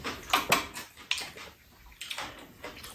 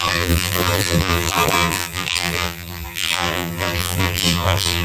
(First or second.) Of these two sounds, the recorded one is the first